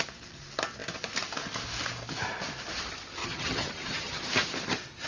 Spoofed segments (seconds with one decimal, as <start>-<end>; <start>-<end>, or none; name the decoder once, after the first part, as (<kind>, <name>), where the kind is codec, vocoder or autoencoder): 3.2-4.2 (vocoder, HiFi-GAN)